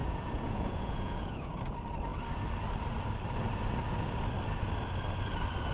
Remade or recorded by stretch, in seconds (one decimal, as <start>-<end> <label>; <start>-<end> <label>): 0.0-1.5 remade; 1.5-5.7 recorded